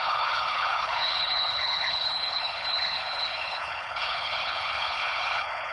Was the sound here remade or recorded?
remade